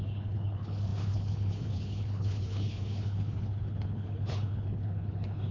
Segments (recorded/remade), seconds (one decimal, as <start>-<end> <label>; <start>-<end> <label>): 0.0-5.5 remade